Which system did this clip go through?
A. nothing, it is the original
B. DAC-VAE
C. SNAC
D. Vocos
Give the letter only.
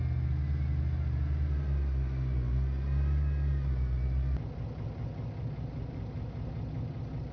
A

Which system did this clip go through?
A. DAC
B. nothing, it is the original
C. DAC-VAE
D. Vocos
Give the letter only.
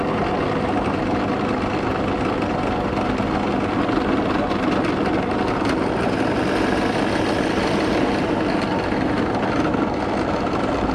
B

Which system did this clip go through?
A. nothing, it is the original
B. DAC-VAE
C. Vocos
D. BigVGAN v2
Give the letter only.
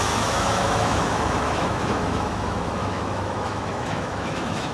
B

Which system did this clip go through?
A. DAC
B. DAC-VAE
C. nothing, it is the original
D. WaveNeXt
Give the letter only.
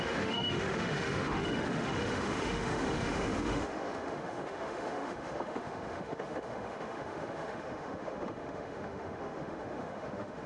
B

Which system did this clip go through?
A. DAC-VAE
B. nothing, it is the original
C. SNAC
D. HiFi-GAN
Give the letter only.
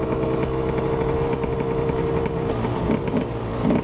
B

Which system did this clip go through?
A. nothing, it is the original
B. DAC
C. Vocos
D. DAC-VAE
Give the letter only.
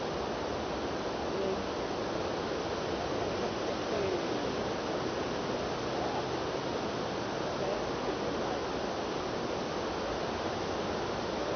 A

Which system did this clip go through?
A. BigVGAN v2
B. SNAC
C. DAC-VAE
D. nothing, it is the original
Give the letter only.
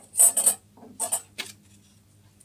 D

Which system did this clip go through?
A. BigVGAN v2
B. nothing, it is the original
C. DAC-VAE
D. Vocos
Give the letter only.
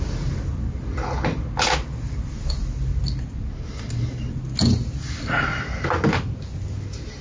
B